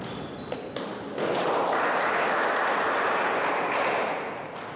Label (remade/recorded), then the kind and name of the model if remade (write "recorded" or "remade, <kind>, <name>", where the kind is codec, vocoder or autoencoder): recorded